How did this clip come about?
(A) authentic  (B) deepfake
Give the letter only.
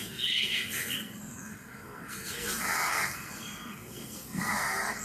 B